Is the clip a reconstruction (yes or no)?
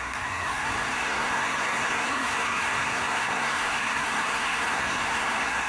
yes